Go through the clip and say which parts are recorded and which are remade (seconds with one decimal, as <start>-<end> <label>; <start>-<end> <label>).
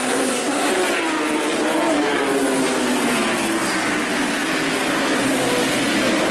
0.0-0.7 remade; 0.7-6.3 recorded